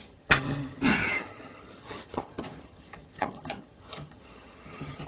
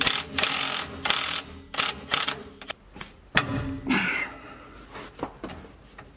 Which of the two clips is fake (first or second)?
first